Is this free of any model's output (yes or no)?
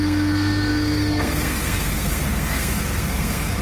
no